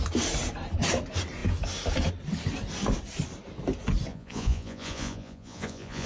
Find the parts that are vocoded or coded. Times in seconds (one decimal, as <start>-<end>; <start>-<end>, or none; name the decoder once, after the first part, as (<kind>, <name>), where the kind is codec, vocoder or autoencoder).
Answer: 4.1-6.1 (vocoder, Vocos)